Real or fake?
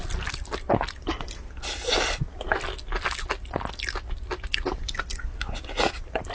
real